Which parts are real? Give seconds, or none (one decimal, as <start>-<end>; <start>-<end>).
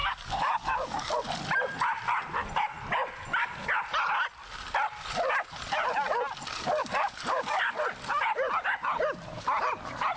1.1-6.8; 7.6-10.2